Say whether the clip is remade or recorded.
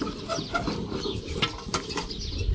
recorded